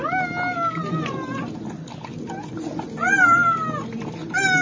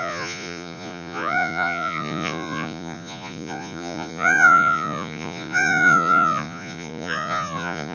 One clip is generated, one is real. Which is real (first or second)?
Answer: first